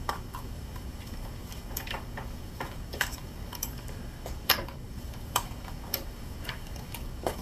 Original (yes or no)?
no